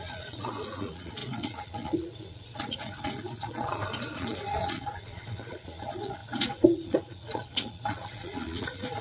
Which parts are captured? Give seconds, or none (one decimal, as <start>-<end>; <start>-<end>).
none